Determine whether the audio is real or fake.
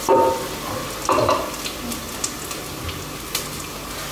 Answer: real